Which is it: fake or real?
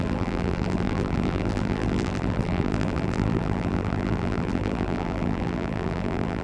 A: fake